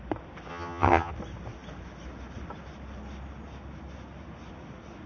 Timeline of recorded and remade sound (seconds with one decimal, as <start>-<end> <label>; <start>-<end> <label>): 0.0-0.5 recorded; 0.5-1.1 remade; 1.1-5.1 recorded